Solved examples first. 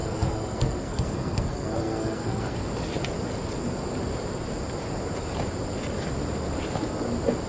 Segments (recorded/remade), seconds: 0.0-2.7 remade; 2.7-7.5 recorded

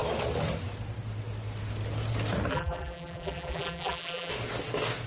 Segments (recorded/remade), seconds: 0.0-2.5 recorded; 2.5-4.3 remade; 4.3-5.1 recorded